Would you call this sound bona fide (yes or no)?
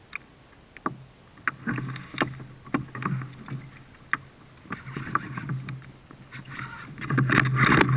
yes